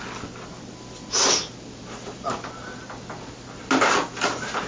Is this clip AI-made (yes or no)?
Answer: no